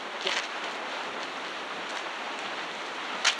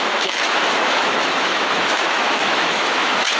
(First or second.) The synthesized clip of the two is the second